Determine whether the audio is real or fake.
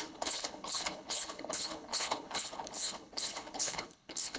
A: fake